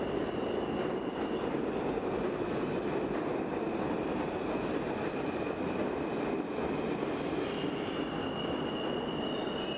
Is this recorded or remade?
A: recorded